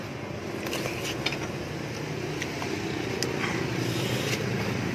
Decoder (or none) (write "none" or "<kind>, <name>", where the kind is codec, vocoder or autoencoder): none